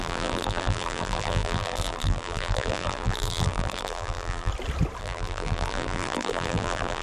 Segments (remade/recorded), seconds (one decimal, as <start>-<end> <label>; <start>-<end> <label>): 0.0-4.5 remade; 4.5-5.0 recorded; 5.0-7.0 remade